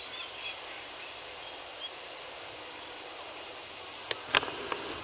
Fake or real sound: real